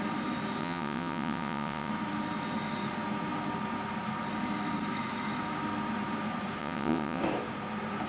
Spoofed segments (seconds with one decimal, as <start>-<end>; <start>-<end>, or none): 0.6-1.9; 6.6-7.2